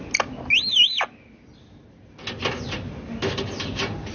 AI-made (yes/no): no